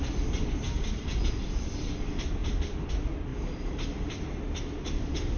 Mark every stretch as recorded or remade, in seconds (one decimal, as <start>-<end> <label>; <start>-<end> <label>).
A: 0.0-5.4 recorded